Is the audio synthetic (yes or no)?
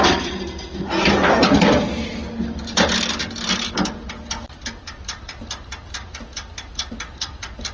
no